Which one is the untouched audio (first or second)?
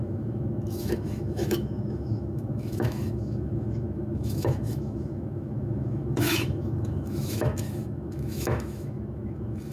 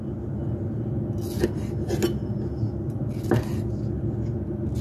second